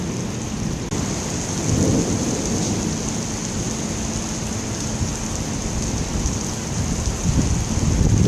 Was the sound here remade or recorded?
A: recorded